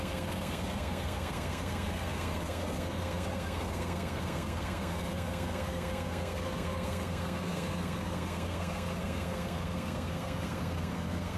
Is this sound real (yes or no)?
no